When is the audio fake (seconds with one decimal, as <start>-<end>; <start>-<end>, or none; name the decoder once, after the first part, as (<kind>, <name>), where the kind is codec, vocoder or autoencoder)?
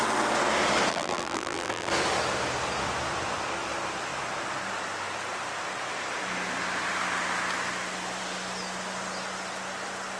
0.9-1.9 (vocoder, BigVGAN v2)